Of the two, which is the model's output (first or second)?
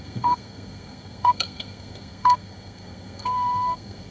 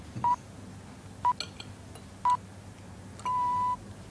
first